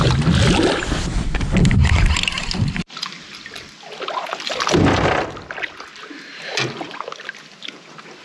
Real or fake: real